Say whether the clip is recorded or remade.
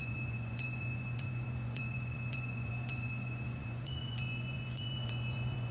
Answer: remade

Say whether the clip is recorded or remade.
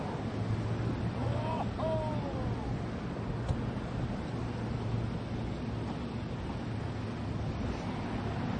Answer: recorded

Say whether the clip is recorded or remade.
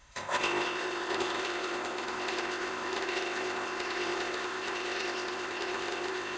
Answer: remade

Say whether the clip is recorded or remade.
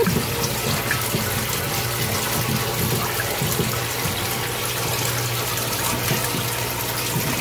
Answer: recorded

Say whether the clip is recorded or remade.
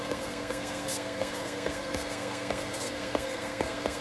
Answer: remade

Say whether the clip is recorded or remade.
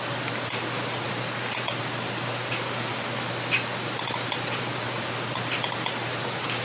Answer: recorded